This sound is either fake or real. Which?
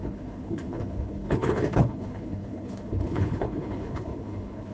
fake